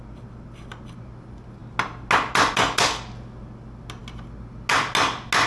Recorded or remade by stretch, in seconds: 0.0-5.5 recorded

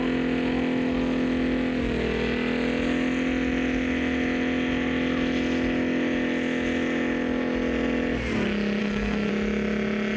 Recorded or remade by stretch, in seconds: 0.0-8.8 recorded; 8.8-9.3 remade; 9.3-10.2 recorded